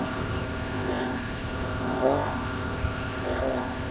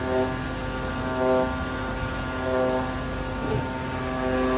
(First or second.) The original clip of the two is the second